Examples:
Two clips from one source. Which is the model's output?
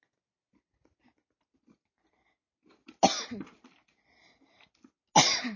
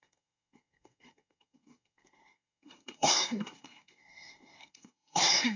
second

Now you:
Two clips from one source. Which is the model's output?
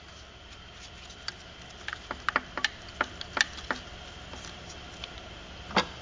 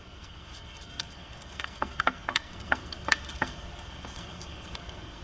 second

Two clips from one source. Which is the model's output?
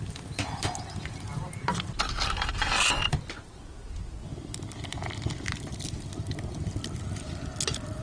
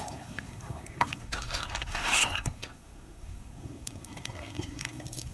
second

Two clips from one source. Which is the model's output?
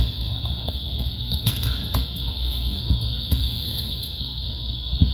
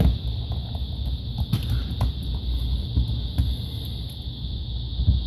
first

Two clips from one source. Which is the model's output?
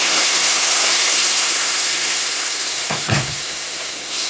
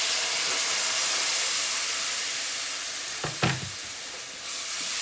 first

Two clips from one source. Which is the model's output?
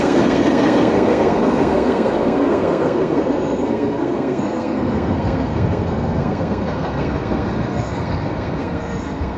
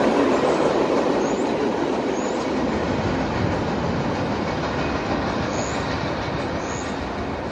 first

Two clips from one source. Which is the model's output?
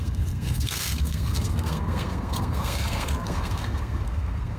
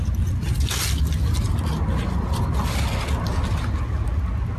first